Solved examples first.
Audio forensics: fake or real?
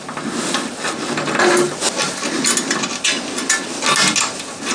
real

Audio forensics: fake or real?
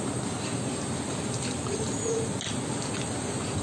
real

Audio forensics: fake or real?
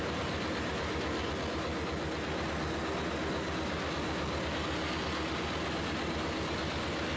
real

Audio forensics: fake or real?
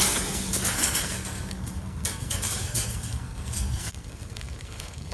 fake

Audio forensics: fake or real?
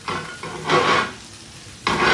real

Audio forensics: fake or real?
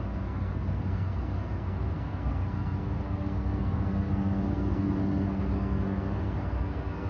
fake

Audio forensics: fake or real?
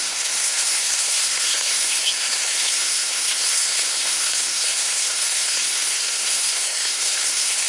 fake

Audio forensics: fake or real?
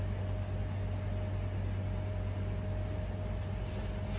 real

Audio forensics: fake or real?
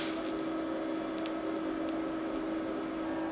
real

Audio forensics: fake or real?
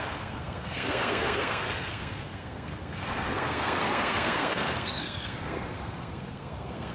fake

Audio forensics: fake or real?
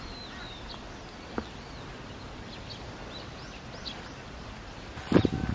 real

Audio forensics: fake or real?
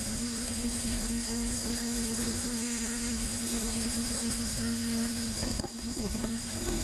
fake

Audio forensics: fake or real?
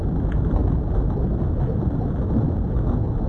real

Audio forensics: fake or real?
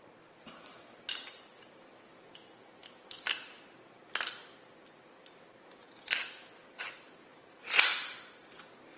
real